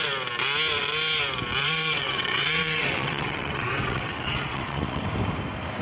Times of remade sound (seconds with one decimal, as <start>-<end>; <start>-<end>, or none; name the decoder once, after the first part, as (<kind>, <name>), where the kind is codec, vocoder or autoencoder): 1.6-5.0 (vocoder, WaveNeXt)